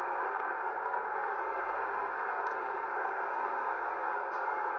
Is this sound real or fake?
fake